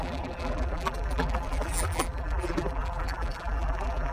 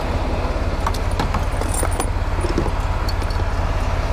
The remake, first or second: first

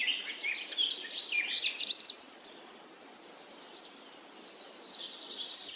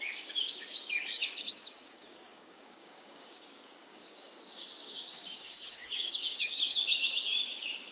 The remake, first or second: second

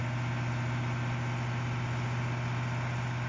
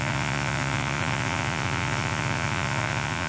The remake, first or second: second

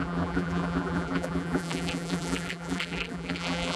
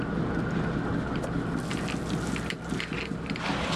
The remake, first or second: first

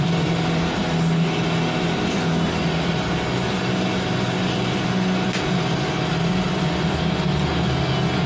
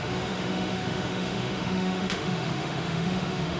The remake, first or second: second